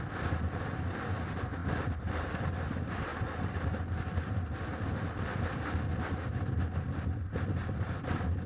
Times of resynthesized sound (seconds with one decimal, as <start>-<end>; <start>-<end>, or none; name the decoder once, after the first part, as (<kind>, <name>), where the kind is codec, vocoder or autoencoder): none